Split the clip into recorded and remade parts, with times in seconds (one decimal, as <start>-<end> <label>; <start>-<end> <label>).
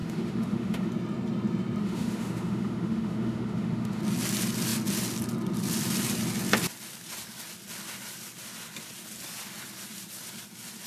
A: 0.0-0.9 remade; 0.9-1.8 recorded; 1.8-4.0 remade; 4.0-10.9 recorded